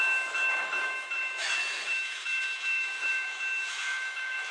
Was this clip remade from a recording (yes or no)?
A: yes